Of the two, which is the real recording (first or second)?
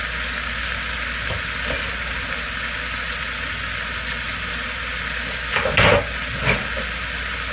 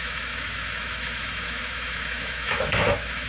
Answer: first